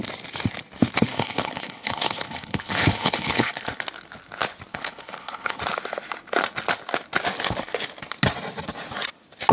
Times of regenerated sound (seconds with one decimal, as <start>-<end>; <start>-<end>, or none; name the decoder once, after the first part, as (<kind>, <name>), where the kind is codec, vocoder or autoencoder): 1.1-3.8 (codec, HILCodec); 4.7-5.6

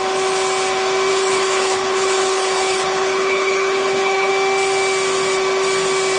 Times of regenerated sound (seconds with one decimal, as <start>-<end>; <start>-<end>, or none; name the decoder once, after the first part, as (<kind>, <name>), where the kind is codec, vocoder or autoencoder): 1.1-4.3 (codec, HILCodec)